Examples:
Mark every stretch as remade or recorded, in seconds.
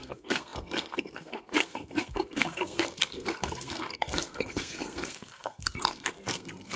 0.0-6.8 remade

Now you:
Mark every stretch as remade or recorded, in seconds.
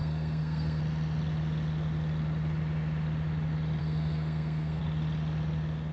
0.0-0.8 remade; 0.8-3.8 recorded; 3.8-4.8 remade; 4.8-5.9 recorded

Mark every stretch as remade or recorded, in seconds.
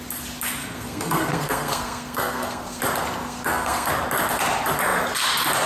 0.0-0.6 recorded; 0.6-2.8 remade; 2.8-3.2 recorded; 3.2-3.9 remade; 3.9-5.7 recorded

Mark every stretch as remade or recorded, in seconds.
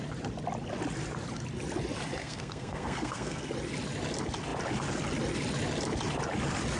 0.0-2.2 recorded; 2.2-3.5 remade; 3.5-6.8 recorded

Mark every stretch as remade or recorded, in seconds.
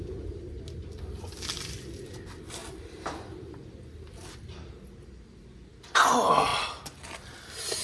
0.0-7.8 recorded